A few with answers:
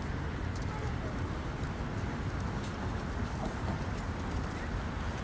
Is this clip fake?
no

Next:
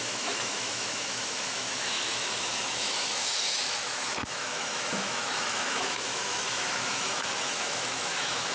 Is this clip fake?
yes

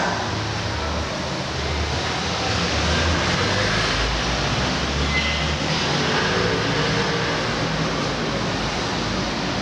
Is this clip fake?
no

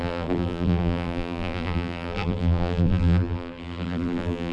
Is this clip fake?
yes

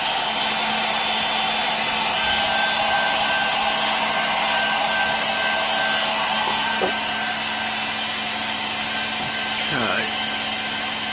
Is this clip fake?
no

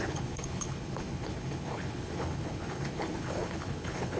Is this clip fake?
yes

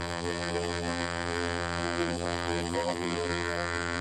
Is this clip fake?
yes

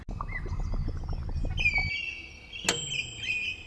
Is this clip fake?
no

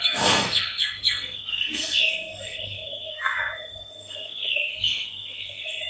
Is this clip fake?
yes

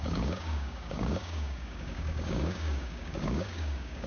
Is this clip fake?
yes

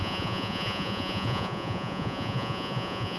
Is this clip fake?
yes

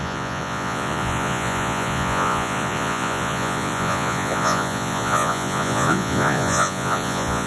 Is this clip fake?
yes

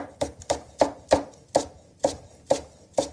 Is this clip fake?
no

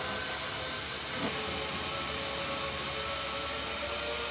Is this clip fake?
no